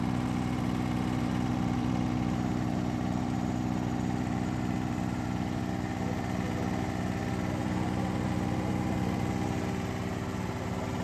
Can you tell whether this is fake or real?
real